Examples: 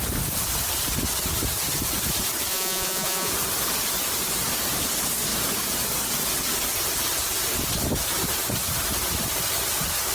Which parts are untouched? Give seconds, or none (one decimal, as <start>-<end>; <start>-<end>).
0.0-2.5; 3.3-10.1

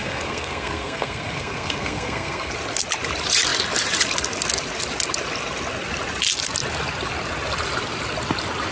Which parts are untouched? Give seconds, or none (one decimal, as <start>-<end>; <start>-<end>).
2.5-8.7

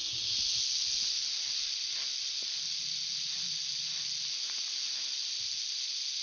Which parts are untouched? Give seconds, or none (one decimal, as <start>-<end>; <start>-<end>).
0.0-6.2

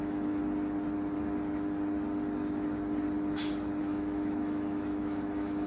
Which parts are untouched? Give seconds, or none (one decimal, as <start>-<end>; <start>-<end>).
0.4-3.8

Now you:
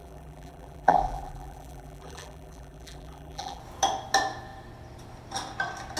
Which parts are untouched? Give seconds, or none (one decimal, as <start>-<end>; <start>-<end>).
3.6-6.0

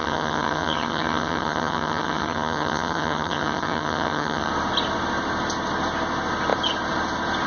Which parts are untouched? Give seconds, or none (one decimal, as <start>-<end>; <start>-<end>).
4.5-7.5